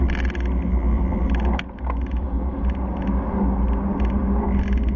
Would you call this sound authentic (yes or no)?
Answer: yes